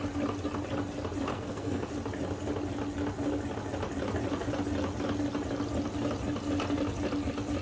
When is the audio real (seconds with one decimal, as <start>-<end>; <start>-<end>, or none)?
0.0-1.3; 1.9-7.6